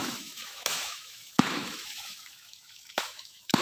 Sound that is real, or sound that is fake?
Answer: fake